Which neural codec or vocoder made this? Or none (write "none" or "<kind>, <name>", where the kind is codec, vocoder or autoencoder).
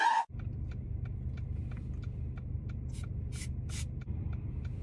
none